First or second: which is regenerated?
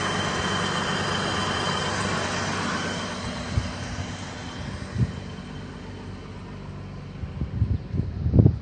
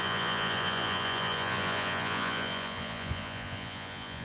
second